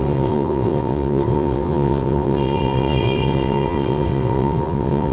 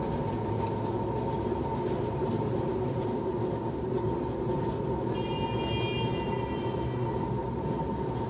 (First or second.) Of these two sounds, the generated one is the first